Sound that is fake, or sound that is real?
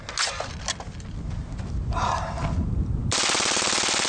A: real